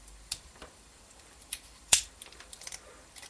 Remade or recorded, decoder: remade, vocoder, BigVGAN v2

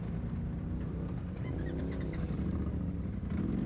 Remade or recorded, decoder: remade, vocoder, BigVGAN v2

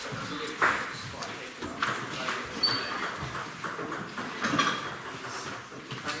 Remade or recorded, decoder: recorded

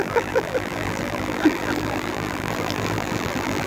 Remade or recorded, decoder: remade, vocoder, BigVGAN v2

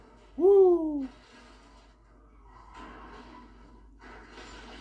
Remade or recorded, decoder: recorded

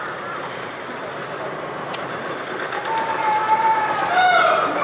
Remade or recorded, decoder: remade, vocoder, BigVGAN v2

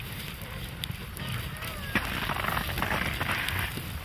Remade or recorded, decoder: recorded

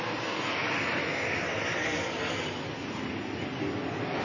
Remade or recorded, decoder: recorded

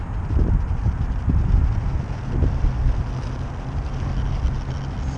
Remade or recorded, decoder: recorded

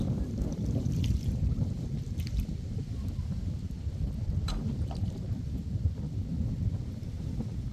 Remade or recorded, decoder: remade, vocoder, BigVGAN v2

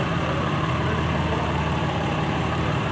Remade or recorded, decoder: remade, vocoder, BigVGAN v2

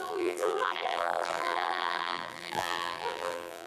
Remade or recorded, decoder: remade, vocoder, BigVGAN v2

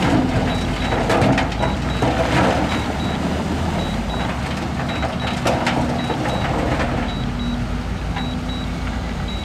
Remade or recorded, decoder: recorded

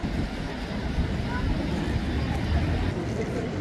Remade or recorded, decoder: recorded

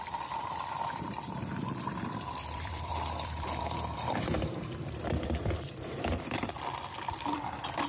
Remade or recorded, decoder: remade, vocoder, BigVGAN v2